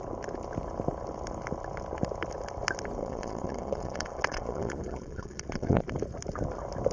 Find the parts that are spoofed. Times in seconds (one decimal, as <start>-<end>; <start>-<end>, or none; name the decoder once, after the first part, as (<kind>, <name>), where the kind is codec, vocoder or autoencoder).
3.0-5.8 (vocoder, Vocos)